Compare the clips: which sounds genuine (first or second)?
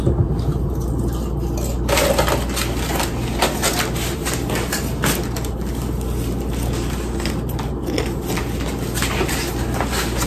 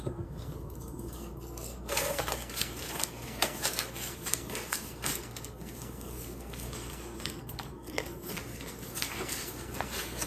first